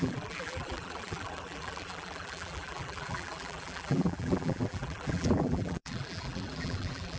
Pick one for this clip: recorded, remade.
remade